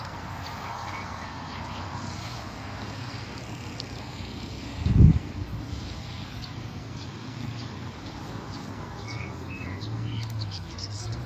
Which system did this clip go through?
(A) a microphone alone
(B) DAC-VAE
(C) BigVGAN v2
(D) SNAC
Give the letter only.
D